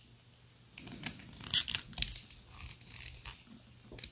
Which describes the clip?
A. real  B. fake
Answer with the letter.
A